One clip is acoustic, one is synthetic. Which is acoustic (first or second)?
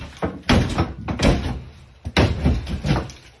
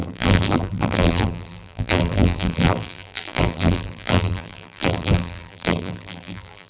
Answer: first